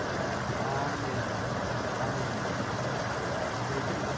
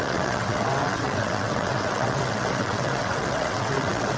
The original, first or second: first